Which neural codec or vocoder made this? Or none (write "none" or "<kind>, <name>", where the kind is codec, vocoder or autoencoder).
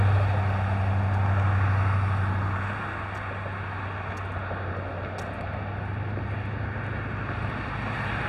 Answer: none